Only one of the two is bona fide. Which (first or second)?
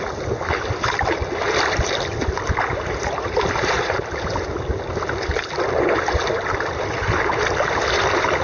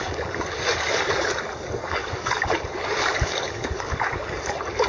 first